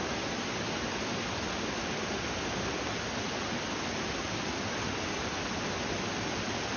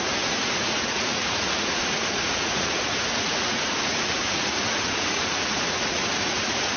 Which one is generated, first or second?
second